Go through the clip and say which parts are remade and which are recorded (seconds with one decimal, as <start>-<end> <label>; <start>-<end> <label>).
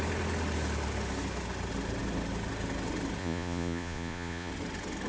0.0-3.2 recorded; 3.2-4.5 remade; 4.5-5.1 recorded